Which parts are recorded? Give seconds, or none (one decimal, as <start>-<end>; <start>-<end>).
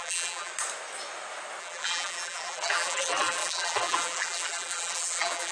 0.5-1.6